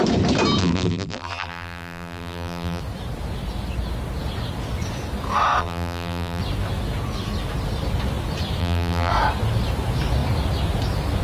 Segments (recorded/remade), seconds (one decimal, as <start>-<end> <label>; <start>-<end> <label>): 0.0-0.6 recorded; 0.6-2.8 remade; 2.8-5.6 recorded; 5.6-6.4 remade; 6.4-8.6 recorded; 8.6-9.1 remade; 9.1-11.2 recorded